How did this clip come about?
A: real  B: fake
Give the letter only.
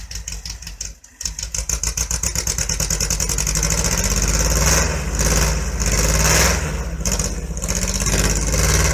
A